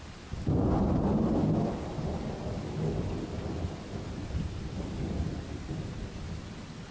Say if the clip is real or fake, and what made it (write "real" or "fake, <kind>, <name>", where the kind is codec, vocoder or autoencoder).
real